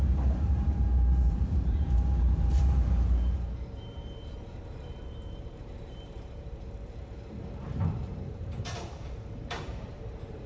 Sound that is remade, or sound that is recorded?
remade